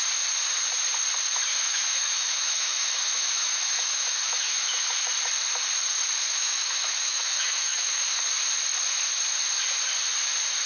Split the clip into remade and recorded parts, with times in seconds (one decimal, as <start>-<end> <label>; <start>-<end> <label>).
0.0-1.5 recorded; 1.5-5.1 remade; 5.1-6.3 recorded; 6.3-8.2 remade; 8.2-10.7 recorded